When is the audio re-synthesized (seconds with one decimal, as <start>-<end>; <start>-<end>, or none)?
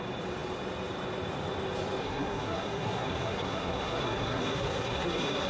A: 2.0-5.5